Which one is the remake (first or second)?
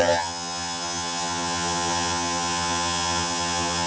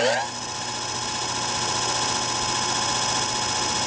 first